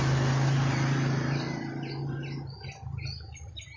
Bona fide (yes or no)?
yes